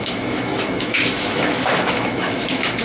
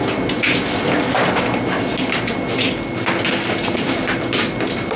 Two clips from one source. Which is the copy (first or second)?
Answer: first